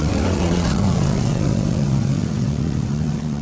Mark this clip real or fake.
fake